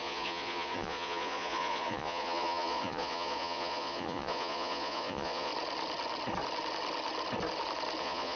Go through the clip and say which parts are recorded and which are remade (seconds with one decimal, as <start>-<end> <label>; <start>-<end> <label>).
0.0-5.5 remade; 5.5-8.0 recorded; 8.0-8.4 remade